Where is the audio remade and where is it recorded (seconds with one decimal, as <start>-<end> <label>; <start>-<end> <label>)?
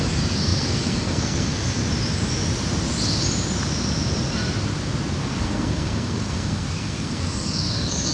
0.0-1.8 remade; 1.8-5.2 recorded; 5.2-8.1 remade